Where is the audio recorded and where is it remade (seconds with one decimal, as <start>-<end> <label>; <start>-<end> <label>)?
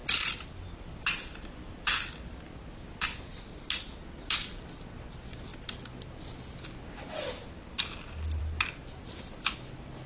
0.0-10.1 recorded